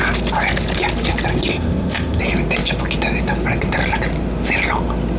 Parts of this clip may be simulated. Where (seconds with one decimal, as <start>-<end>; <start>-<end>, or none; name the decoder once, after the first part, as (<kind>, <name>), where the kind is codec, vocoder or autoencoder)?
1.5-2.2 (codec, ZipCodec)